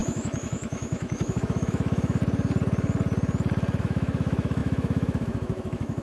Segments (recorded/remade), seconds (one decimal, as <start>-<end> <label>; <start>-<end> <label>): 0.0-2.2 remade; 2.2-3.8 recorded; 3.8-6.0 remade